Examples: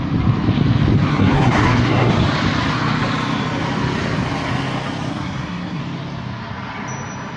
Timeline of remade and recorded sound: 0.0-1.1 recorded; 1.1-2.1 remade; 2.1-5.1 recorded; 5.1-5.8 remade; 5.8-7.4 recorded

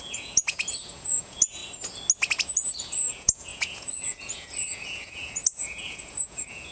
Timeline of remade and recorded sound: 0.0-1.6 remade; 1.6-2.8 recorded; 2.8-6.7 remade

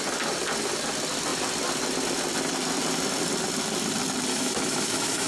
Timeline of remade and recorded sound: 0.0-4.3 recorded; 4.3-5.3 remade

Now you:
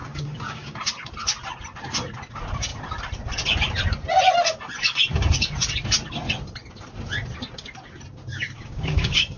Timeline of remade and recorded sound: 0.0-0.8 remade; 0.8-8.3 recorded; 8.3-9.4 remade

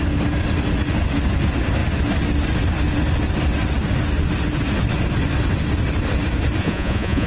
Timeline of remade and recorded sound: 0.0-6.6 recorded; 6.6-7.3 remade

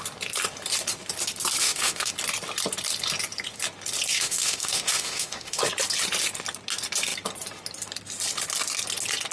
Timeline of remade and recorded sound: 0.0-1.6 recorded; 1.6-2.1 remade; 2.1-4.1 recorded; 4.1-5.6 remade; 5.6-9.3 recorded

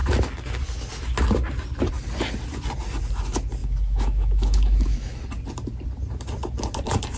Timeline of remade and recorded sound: 0.0-3.6 recorded; 3.6-5.2 remade; 5.2-7.2 recorded

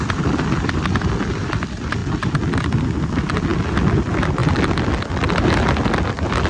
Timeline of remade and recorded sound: 0.0-6.5 recorded